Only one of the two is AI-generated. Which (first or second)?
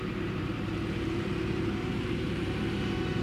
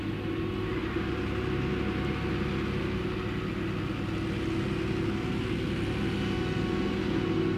first